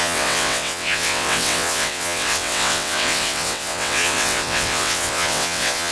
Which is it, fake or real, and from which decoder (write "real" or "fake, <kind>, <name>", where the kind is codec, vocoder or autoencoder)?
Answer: fake, vocoder, WaveNeXt